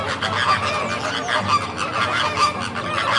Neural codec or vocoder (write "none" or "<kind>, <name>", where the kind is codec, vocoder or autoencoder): none